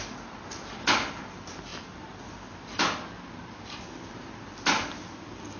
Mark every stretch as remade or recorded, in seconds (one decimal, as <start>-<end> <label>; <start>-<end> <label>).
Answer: 0.0-5.6 remade